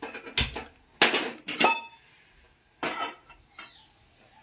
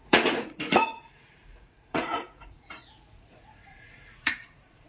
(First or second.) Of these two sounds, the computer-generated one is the second